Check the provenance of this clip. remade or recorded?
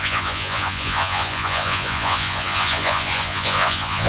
remade